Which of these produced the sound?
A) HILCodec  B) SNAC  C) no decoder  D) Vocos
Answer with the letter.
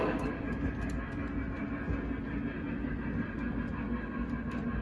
C